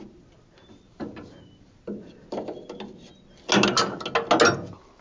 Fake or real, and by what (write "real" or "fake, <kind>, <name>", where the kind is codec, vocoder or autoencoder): real